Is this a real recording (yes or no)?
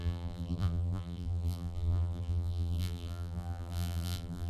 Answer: no